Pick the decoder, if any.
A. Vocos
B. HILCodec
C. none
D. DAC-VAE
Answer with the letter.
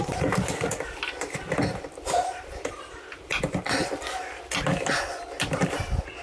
C